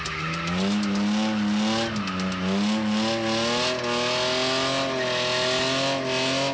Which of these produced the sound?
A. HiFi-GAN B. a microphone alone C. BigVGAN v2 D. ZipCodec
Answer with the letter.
B